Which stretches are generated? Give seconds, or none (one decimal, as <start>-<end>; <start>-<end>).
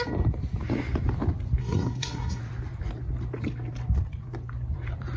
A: 1.6-2.4